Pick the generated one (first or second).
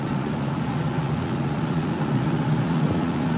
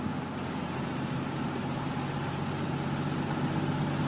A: first